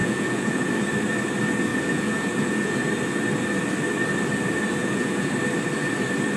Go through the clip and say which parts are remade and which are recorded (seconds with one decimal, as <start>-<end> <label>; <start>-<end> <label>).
0.0-0.7 remade; 0.7-1.7 recorded; 1.7-2.8 remade; 2.8-4.8 recorded; 4.8-5.3 remade; 5.3-6.4 recorded

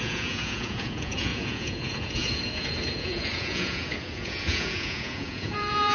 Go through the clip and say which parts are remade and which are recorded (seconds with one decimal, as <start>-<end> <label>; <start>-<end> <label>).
0.0-5.9 remade

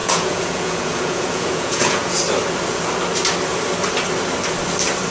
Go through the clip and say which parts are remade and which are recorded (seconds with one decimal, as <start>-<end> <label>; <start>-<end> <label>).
0.0-2.2 remade; 2.2-5.1 recorded

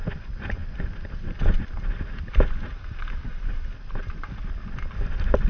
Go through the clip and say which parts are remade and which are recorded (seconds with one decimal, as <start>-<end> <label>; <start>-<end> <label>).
0.0-5.5 recorded

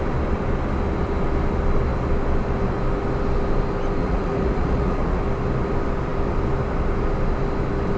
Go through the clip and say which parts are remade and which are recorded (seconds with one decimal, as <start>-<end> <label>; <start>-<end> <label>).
0.0-4.0 recorded; 4.0-5.2 remade; 5.2-8.0 recorded

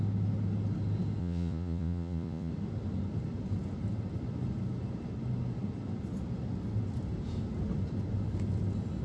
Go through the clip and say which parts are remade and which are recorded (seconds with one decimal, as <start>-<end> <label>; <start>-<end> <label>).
0.0-1.2 recorded; 1.2-2.5 remade; 2.5-9.0 recorded

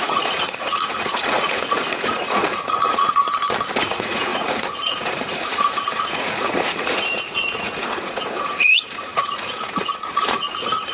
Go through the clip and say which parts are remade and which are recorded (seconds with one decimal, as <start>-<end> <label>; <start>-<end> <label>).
0.0-3.2 remade; 3.2-3.8 recorded; 3.8-10.9 remade

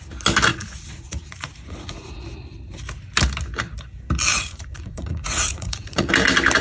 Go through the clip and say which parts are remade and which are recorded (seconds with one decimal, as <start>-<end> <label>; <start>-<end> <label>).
0.0-0.5 recorded; 0.5-2.2 remade; 2.2-4.3 recorded; 4.3-6.1 remade; 6.1-6.6 recorded